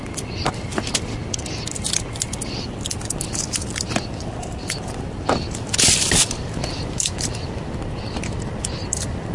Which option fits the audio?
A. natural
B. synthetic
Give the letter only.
A